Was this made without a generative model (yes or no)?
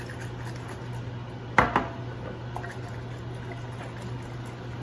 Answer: yes